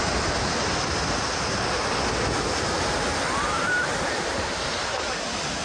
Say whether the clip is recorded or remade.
recorded